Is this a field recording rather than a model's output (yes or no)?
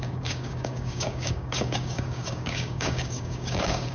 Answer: no